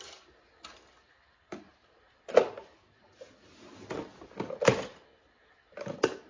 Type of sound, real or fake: real